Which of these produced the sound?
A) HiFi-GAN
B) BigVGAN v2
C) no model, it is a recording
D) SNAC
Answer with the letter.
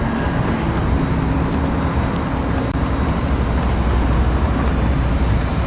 C